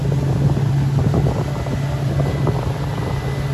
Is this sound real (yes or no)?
yes